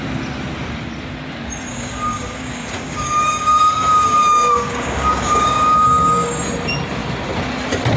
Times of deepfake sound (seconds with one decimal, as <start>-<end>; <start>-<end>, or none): 1.7-6.4